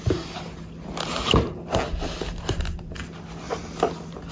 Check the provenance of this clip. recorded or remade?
recorded